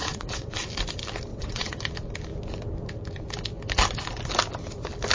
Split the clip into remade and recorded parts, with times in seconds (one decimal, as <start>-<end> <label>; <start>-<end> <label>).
0.0-0.7 remade; 0.7-1.3 recorded; 1.3-1.8 remade; 1.8-5.1 recorded